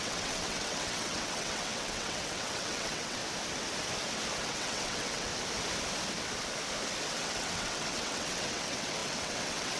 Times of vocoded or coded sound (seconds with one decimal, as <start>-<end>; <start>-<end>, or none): 0.0-3.2; 4.4-5.3; 7.1-9.8